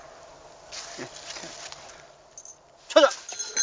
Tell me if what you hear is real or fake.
real